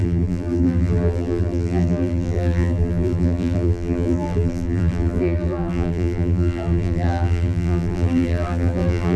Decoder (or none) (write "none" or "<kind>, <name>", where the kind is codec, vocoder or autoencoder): vocoder, BigVGAN v2